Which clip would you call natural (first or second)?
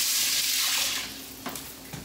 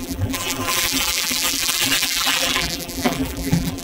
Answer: first